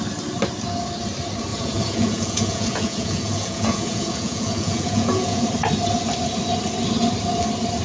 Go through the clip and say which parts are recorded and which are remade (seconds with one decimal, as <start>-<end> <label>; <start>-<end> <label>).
0.0-1.5 recorded; 1.5-5.4 remade; 5.4-7.8 recorded